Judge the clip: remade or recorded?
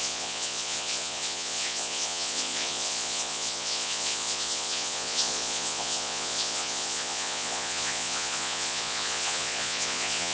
remade